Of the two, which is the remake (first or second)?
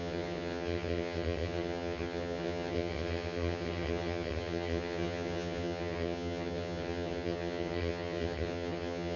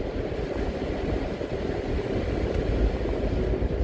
first